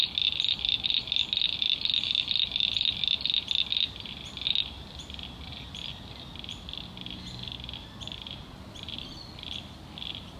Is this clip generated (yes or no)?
no